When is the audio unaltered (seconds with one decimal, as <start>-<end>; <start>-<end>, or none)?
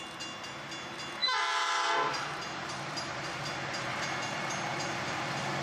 0.0-5.6